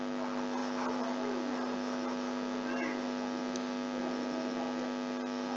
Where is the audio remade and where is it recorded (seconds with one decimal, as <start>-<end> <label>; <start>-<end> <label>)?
0.0-5.6 recorded

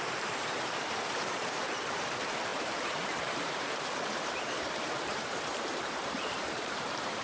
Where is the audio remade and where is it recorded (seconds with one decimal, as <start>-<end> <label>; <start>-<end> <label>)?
0.0-7.2 remade

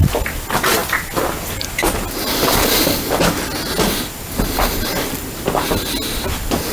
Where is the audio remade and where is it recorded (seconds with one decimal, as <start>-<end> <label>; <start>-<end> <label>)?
0.0-6.7 recorded

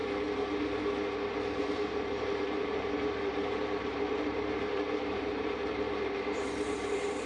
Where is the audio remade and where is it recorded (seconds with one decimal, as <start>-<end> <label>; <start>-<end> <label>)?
0.0-1.6 recorded; 1.6-7.3 remade

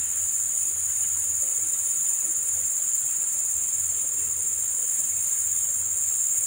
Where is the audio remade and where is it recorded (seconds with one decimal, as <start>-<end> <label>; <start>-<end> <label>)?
0.0-1.5 recorded; 1.5-5.4 remade; 5.4-6.5 recorded

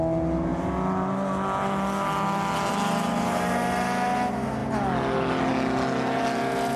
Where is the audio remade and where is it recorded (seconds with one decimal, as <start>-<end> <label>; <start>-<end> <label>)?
0.0-6.8 recorded

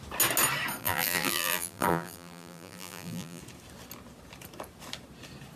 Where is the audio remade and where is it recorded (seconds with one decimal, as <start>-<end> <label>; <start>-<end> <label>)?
0.0-0.8 recorded; 0.8-3.4 remade; 3.4-5.6 recorded

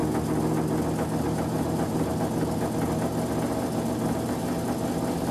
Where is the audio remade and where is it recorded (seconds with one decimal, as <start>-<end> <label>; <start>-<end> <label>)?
0.0-1.2 recorded; 1.2-2.1 remade; 2.1-5.3 recorded